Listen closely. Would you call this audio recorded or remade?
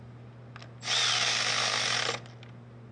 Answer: recorded